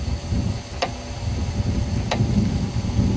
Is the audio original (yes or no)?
yes